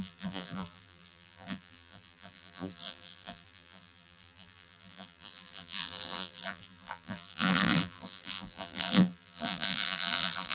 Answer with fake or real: fake